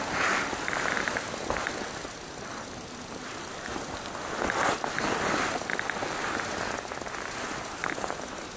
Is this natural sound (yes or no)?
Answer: yes